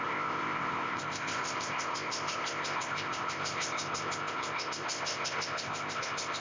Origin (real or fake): fake